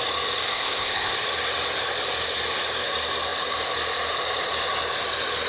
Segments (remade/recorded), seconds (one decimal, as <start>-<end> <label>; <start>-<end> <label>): 0.0-0.5 recorded; 0.5-1.1 remade; 1.1-5.5 recorded